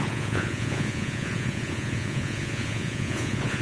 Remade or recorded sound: remade